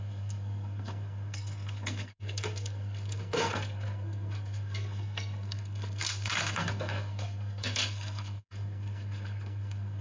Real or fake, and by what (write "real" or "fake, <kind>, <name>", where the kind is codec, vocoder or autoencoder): fake, codec, SNAC